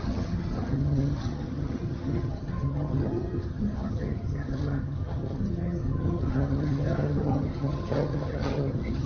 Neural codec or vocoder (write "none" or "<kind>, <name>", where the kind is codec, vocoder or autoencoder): vocoder, HiFi-GAN